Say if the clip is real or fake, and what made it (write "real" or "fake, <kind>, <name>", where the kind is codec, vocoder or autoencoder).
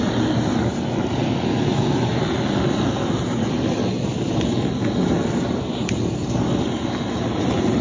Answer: real